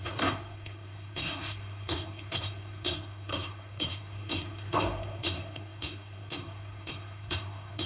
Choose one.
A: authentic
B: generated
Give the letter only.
B